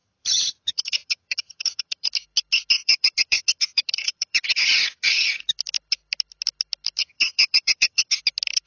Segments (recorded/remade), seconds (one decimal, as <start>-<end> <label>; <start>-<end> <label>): 0.0-2.1 remade; 2.1-2.8 recorded; 2.8-5.4 remade; 5.4-7.0 recorded; 7.0-8.2 remade; 8.2-8.7 recorded